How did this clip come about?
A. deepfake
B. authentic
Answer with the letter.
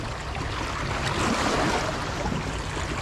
B